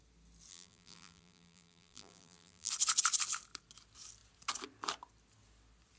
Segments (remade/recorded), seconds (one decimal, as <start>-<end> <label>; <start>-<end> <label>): 0.0-0.5 recorded; 0.5-2.7 remade; 2.7-6.0 recorded